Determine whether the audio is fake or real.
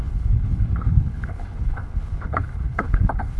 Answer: fake